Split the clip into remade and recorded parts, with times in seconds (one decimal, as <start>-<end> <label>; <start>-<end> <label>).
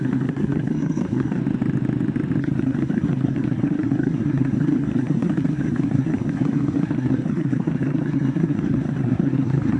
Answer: 0.0-1.4 remade; 1.4-2.4 recorded; 2.4-9.8 remade